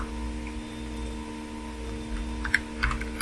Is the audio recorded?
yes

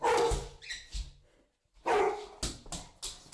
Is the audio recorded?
yes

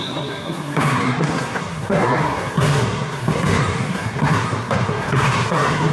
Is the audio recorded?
no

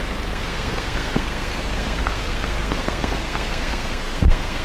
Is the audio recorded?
no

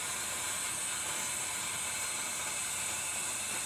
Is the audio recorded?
yes